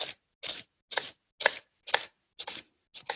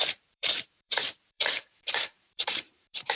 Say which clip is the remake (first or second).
second